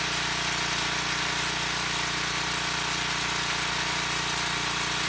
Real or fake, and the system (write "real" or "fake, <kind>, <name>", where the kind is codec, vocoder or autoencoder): real